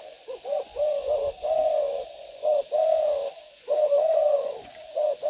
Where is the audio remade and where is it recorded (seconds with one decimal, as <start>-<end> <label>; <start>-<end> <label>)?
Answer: 0.0-5.3 remade